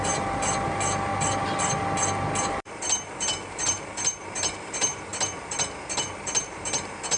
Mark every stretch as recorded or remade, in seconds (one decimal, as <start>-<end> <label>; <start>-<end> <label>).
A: 0.0-1.1 remade; 1.1-2.4 recorded; 2.4-5.1 remade; 5.1-6.2 recorded; 6.2-7.2 remade